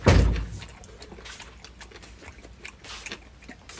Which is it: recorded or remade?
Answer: recorded